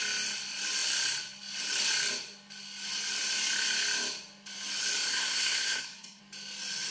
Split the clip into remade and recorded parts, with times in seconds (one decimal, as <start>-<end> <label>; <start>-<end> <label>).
0.0-5.1 recorded; 5.1-6.2 remade; 6.2-6.9 recorded